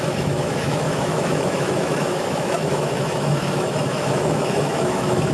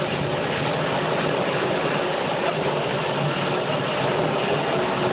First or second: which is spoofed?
first